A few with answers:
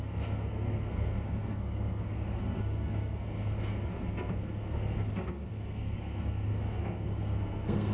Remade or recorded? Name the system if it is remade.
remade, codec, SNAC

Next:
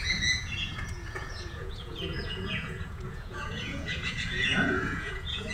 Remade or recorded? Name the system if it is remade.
remade, vocoder, Vocos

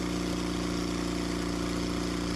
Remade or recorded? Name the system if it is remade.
recorded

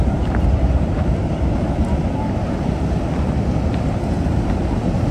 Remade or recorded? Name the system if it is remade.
recorded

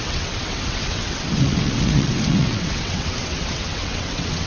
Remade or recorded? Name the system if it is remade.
remade, vocoder, WaveNeXt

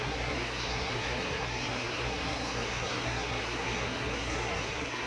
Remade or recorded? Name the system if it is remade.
remade, codec, SNAC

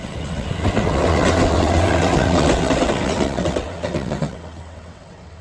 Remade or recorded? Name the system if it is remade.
remade, vocoder, WaveNeXt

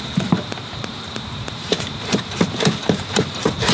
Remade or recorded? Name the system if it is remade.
remade, vocoder, BigVGAN v2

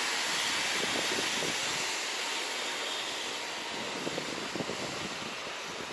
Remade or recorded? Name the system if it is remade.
recorded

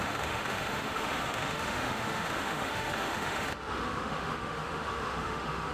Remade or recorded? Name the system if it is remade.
remade, autoencoder, DAC-VAE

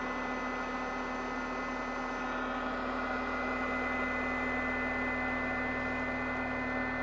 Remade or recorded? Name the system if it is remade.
recorded